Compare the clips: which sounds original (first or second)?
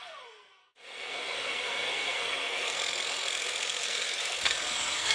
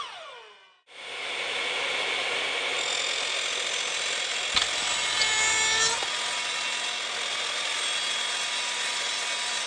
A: second